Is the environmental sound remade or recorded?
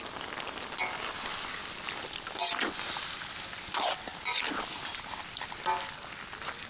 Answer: recorded